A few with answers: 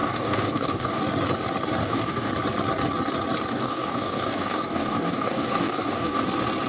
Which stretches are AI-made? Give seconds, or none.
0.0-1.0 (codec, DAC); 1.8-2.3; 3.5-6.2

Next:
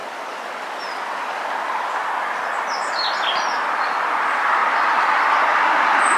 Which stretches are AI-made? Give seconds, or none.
none

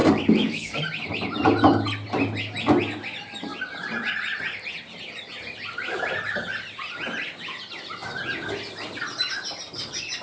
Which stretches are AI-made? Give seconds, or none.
0.0-0.8 (codec, DAC)

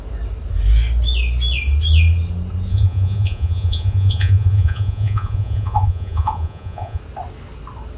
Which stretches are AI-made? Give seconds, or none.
2.7-7.0 (vocoder, Vocos)

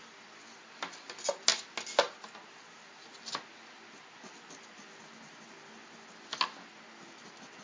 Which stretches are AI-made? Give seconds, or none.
none